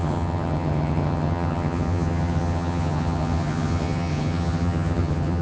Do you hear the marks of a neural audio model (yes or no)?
yes